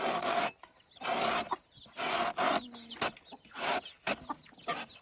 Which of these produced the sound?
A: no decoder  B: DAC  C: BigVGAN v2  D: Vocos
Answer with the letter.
A